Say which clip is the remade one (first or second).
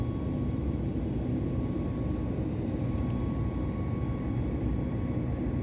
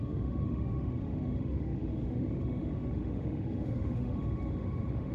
second